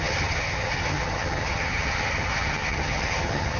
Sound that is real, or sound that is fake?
fake